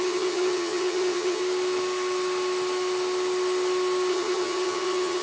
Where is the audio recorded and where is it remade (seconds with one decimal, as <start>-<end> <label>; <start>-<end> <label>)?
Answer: 0.0-1.4 remade; 1.4-4.1 recorded; 4.1-5.2 remade